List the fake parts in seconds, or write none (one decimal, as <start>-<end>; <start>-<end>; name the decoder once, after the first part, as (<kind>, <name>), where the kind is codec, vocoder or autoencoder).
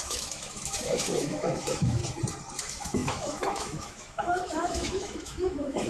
0.0-2.0 (autoencoder, DAC-VAE); 2.6-5.9